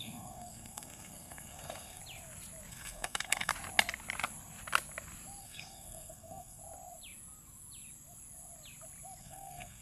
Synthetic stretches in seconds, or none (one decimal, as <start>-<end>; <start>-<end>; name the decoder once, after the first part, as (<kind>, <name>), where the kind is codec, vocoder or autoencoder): 0.0-2.0 (codec, SNAC); 2.7-3.5; 5.4-6.6; 9.2-9.8